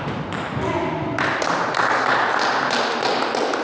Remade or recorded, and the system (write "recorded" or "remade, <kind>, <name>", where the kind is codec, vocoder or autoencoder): recorded